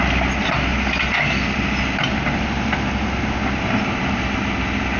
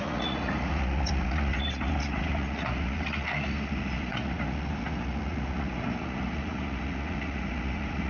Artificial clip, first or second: second